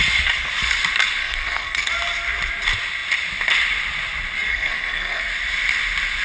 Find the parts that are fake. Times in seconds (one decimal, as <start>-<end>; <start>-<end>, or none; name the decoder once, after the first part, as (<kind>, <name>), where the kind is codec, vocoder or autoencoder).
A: 1.2-1.9 (codec, SNAC); 4.5-5.2